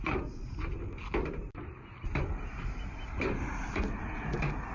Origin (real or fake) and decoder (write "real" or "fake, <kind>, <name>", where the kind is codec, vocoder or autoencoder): real